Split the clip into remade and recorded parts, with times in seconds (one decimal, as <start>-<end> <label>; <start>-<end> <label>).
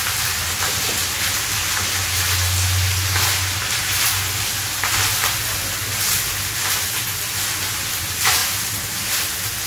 0.0-9.7 recorded